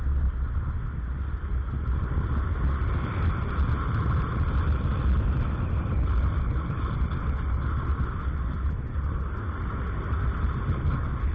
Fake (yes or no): no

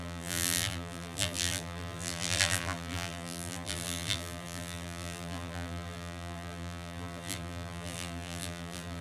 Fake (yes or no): yes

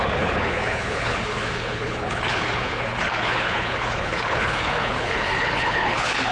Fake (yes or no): yes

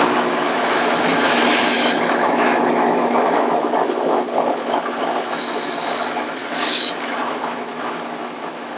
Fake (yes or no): yes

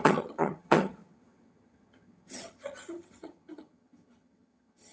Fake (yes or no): yes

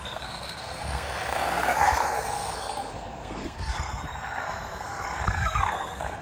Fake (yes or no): yes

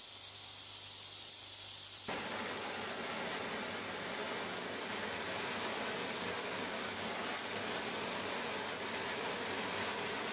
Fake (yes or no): no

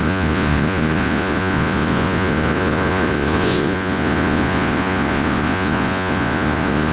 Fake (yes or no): yes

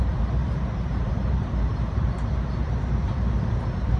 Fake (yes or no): yes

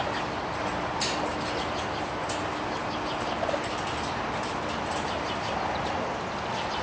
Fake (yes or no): no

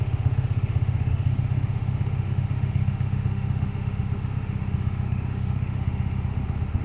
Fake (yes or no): yes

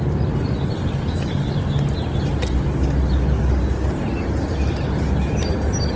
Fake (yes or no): no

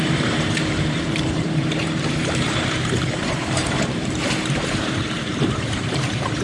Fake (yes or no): yes